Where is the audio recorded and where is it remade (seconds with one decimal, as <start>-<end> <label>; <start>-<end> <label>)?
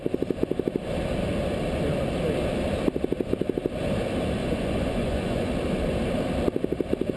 0.0-4.4 recorded; 4.4-5.5 remade; 5.5-7.2 recorded